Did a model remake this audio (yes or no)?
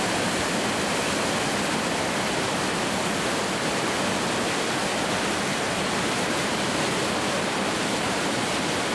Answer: no